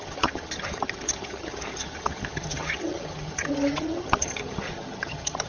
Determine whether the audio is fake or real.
fake